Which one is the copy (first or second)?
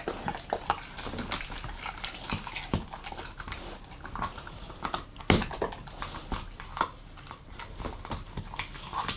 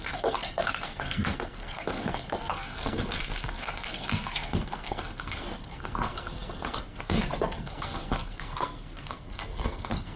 second